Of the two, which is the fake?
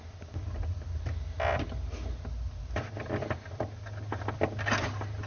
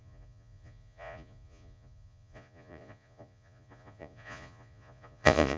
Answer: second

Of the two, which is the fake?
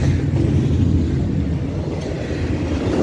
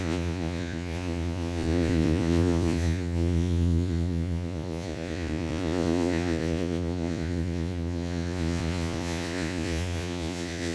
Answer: second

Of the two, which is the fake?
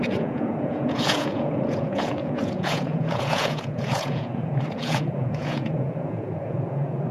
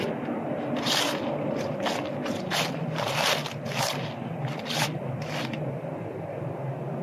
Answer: first